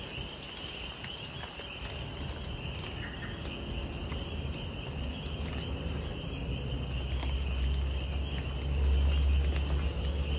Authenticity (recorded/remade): recorded